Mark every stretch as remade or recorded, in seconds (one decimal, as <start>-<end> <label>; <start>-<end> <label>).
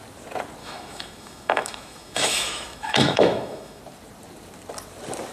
0.0-0.6 recorded; 0.6-3.8 remade; 3.8-5.3 recorded